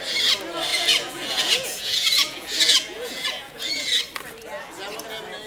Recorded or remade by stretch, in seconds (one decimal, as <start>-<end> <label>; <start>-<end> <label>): 0.0-0.7 recorded; 0.7-4.0 remade; 4.0-5.5 recorded